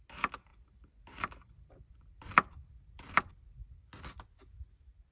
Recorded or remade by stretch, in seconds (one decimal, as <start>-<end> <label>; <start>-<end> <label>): 0.0-0.5 recorded; 0.5-3.3 remade; 3.3-5.1 recorded